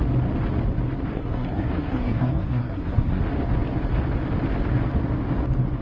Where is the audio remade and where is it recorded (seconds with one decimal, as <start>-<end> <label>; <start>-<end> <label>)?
0.0-1.1 recorded; 1.1-3.2 remade; 3.2-5.8 recorded